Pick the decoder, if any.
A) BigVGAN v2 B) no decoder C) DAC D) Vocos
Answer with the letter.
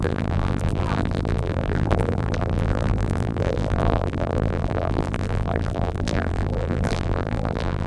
A